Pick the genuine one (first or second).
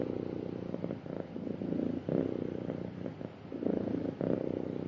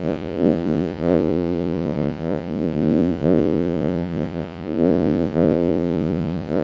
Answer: first